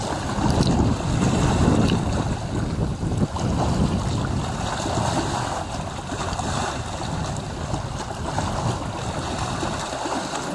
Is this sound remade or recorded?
recorded